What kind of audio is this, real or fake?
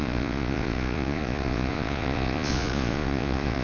fake